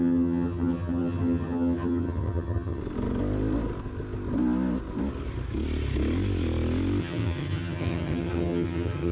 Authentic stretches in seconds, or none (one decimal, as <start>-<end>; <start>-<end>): 2.8-7.0